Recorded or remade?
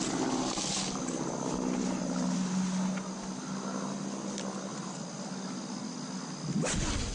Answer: recorded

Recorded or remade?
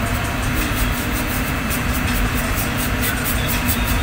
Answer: remade